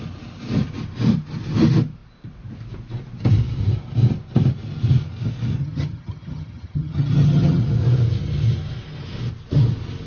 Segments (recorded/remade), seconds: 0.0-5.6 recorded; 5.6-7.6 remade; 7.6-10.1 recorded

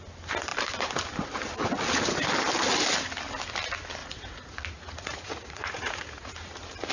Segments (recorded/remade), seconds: 0.0-4.0 recorded; 4.0-6.3 remade; 6.3-6.9 recorded

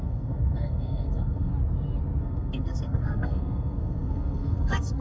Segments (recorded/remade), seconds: 0.0-1.5 remade; 1.5-2.2 recorded; 2.2-5.0 remade

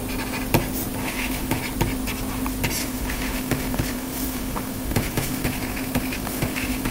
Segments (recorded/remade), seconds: 0.0-1.0 recorded; 1.0-1.6 remade; 1.6-2.8 recorded; 2.8-6.9 remade

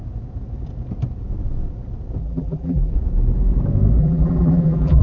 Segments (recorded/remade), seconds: 0.0-2.2 recorded; 2.2-2.9 remade; 2.9-4.0 recorded; 4.0-5.0 remade